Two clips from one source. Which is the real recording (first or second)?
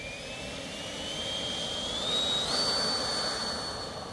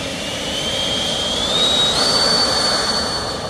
first